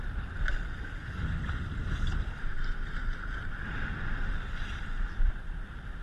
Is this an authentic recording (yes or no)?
yes